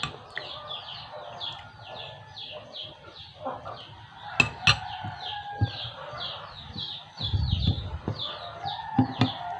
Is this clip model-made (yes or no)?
no